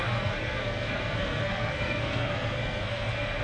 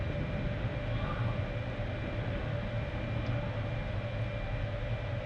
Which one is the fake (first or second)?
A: first